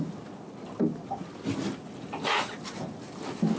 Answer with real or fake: real